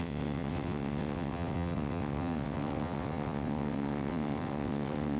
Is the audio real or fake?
fake